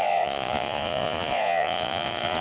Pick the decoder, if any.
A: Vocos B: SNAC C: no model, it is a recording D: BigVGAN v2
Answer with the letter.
A